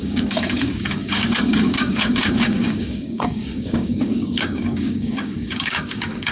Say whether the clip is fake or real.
fake